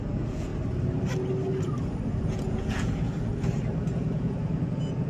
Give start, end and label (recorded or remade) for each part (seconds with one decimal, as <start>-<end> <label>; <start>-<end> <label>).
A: 0.0-0.5 remade; 0.5-2.1 recorded; 2.1-3.3 remade; 3.3-3.9 recorded; 3.9-5.1 remade